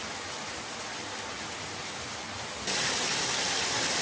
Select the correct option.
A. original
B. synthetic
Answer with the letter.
A